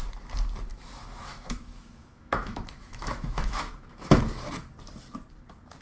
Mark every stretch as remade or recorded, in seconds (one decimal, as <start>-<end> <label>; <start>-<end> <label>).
0.0-0.7 recorded; 0.7-4.2 remade; 4.2-5.8 recorded